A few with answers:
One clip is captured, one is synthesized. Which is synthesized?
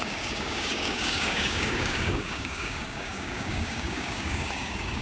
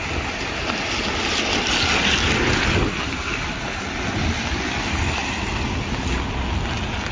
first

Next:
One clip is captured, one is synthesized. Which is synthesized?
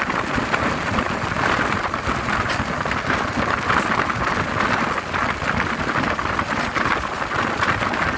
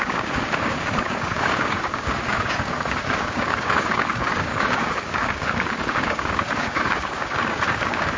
second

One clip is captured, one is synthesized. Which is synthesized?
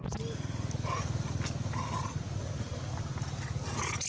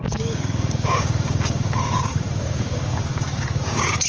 second